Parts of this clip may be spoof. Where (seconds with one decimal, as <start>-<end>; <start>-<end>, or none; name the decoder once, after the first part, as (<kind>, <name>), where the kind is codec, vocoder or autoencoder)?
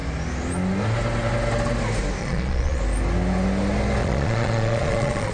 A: 2.2-2.8 (vocoder, Vocos); 4.0-5.3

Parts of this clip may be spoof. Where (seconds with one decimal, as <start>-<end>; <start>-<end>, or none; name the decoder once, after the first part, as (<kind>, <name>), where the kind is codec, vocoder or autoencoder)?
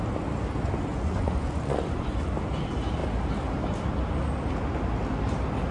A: 0.9-2.3 (vocoder, Vocos)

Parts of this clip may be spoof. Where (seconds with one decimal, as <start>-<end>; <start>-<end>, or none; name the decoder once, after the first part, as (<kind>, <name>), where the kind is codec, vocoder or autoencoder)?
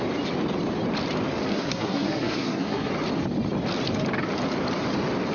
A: 1.5-2.9 (codec, SNAC)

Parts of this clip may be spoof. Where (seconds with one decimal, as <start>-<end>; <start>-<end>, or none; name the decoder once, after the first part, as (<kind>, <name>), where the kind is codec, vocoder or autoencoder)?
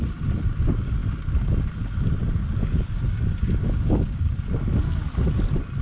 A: 2.6-4.4 (codec, DAC)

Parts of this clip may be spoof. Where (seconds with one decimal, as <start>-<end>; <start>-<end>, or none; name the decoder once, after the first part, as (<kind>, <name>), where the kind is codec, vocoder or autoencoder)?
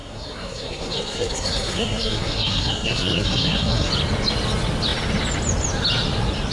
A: 0.0-3.9 (codec, SNAC)